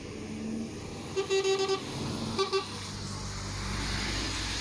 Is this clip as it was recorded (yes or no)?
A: yes